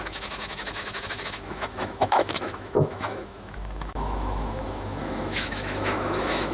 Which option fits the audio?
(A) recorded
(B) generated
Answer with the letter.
B